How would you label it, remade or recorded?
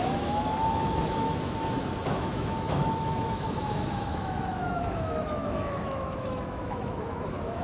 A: remade